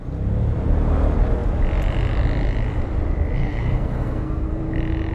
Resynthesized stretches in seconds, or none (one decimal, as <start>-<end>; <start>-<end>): 3.4-4.6